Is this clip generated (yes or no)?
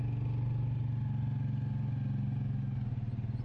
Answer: no